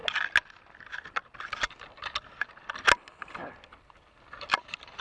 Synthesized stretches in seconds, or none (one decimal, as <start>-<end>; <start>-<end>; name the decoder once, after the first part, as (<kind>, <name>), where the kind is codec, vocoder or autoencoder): none